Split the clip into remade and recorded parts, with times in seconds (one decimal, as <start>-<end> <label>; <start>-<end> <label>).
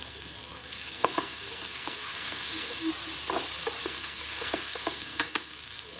0.0-2.9 remade; 2.9-3.8 recorded; 3.8-6.0 remade